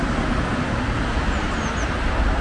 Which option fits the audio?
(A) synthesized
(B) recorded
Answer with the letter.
A